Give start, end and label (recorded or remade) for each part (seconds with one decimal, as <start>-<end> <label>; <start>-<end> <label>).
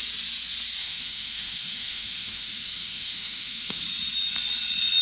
0.0-0.8 recorded; 0.8-3.8 remade; 3.8-5.0 recorded